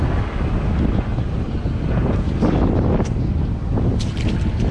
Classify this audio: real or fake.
real